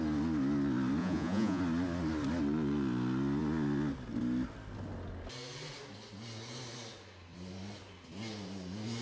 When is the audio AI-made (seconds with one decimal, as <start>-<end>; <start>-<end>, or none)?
1.0-1.6

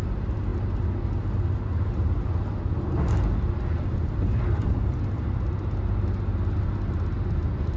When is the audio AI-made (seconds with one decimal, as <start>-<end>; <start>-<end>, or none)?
none

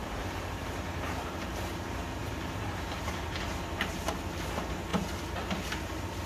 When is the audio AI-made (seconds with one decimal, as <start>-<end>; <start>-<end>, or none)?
0.0-1.7

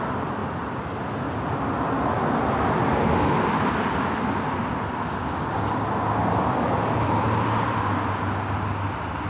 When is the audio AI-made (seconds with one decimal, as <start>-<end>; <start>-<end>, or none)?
none

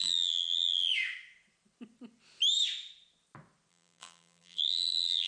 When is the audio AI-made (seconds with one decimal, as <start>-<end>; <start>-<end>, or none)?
0.0-0.9; 3.7-5.3

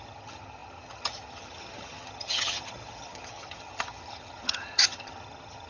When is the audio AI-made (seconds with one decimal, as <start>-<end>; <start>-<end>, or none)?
0.0-5.7

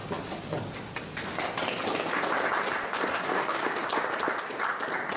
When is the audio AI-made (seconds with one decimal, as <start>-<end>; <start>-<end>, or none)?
3.1-3.6

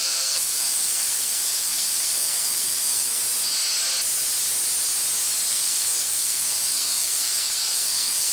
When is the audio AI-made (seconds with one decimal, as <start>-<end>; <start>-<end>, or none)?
0.0-3.2; 5.5-8.3